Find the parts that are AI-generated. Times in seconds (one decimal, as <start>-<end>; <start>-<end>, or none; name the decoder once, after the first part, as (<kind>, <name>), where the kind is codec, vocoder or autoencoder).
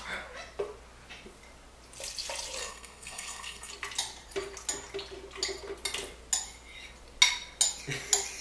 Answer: 2.6-3.7 (codec, SNAC)